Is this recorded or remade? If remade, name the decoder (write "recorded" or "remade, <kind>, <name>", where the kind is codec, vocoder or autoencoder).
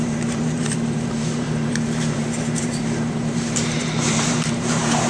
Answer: remade, vocoder, BigVGAN v2